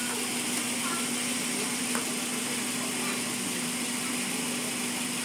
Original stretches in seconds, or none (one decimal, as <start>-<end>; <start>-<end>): 0.0-5.2